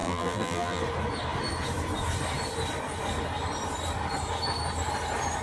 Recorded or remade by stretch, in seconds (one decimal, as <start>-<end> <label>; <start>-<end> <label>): 0.0-0.8 remade; 0.8-5.4 recorded